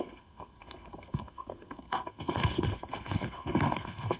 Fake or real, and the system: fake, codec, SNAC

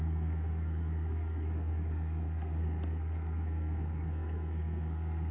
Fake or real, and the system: fake, codec, SNAC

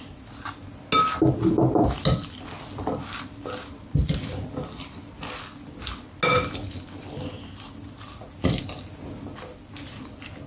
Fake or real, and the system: real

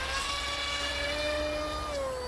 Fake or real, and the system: real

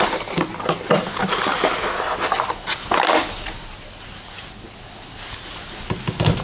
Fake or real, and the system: real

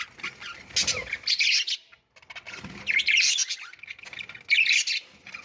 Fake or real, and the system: real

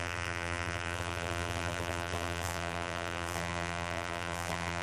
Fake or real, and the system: fake, vocoder, BigVGAN v2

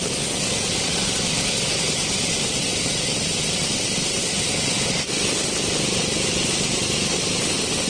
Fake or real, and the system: real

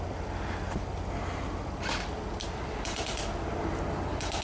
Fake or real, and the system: real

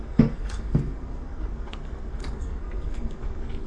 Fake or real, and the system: fake, codec, SNAC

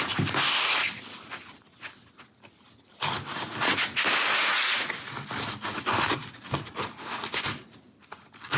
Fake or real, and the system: real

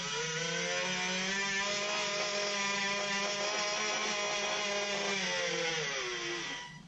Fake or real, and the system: real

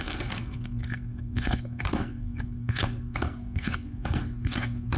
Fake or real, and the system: fake, codec, SNAC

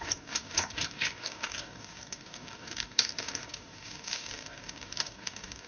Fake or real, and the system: fake, codec, DAC